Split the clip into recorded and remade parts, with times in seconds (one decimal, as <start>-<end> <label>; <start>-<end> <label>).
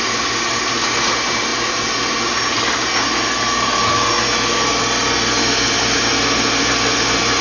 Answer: 0.0-7.4 recorded